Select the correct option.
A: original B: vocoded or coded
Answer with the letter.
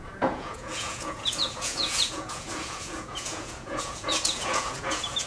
B